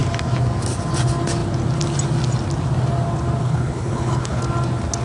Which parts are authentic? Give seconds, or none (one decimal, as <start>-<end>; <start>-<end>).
0.0-3.4; 4.4-5.0